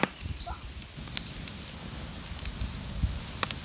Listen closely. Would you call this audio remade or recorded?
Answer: recorded